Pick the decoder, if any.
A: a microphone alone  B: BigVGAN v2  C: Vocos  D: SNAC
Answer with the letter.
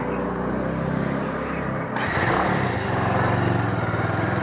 A